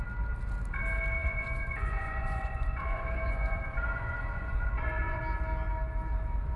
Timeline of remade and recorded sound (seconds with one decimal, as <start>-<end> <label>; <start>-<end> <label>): 0.0-1.2 recorded; 1.2-5.2 remade; 5.2-6.6 recorded